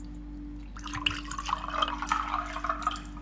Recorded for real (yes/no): yes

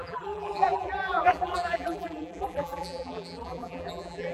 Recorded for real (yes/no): no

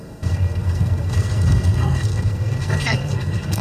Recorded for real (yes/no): no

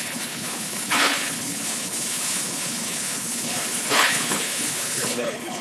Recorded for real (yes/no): no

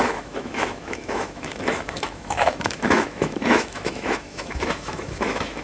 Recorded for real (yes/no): no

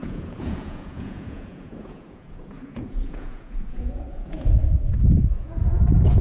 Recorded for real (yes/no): no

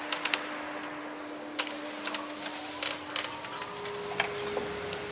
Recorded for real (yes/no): yes